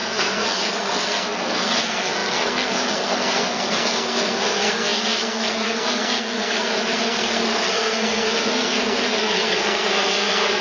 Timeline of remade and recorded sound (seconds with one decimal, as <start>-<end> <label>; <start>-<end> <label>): 0.0-10.6 remade